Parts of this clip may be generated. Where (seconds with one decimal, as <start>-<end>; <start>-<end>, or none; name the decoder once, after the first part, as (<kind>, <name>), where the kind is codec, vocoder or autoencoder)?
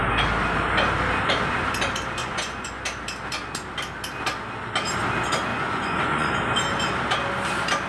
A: 2.2-2.8 (vocoder, Vocos); 5.5-6.3